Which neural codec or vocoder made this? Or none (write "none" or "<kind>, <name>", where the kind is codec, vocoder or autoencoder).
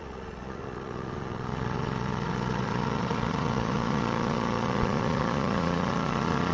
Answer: vocoder, Vocos